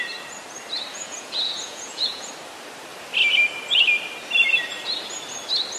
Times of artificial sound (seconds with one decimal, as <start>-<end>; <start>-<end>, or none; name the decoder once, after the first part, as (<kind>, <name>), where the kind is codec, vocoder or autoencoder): 0.9-2.3 (vocoder, Vocos)